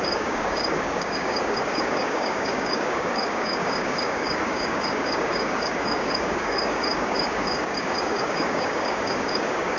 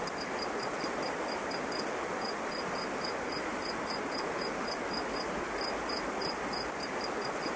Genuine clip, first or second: second